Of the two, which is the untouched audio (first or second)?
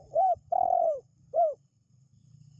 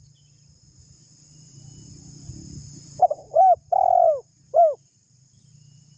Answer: second